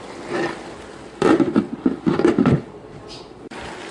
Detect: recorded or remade recorded